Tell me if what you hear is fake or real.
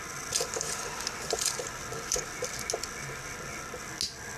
real